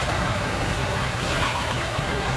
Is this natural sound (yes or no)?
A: no